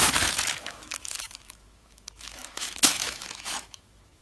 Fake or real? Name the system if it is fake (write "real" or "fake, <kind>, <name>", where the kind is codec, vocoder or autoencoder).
fake, autoencoder, DAC-VAE